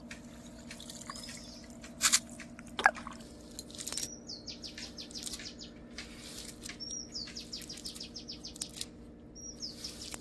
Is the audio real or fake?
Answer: real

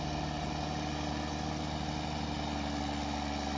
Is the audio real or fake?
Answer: real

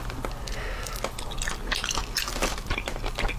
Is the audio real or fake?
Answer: real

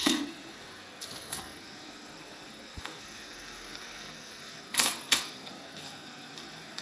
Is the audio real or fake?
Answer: fake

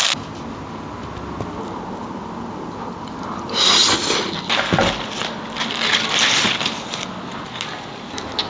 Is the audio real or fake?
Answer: real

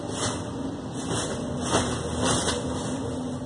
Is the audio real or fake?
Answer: real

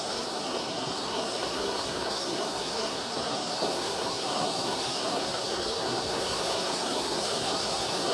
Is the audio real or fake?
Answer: fake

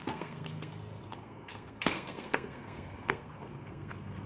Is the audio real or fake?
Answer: fake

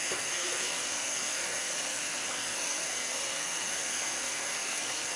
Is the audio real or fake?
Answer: fake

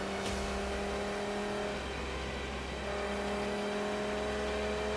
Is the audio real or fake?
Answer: real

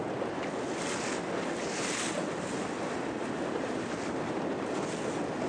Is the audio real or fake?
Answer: real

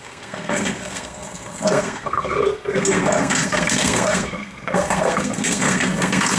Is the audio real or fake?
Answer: fake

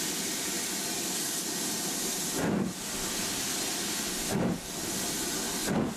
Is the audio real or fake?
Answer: real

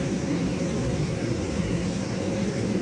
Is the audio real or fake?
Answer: fake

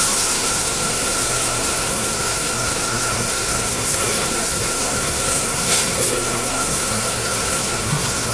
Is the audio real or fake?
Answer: fake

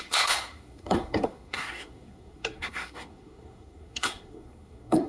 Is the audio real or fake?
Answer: fake